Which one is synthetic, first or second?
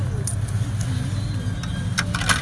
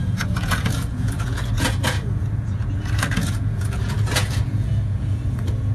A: second